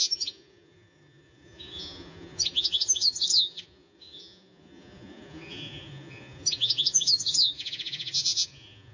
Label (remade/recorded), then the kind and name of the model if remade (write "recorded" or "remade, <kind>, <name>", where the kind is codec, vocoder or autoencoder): remade, vocoder, Vocos